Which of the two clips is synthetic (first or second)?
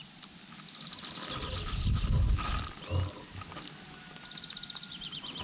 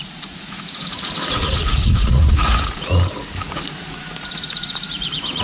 second